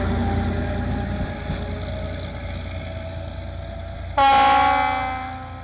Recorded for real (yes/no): yes